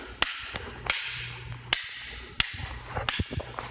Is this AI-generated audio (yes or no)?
no